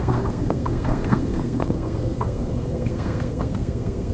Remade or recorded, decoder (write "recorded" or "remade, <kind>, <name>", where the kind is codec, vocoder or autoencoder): remade, codec, SNAC